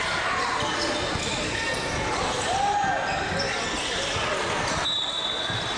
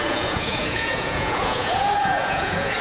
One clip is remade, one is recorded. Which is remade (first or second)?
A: second